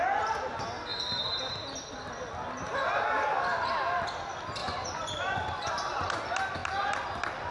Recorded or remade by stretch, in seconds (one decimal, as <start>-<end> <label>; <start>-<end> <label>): 0.0-4.6 recorded; 4.6-5.7 remade; 5.7-7.5 recorded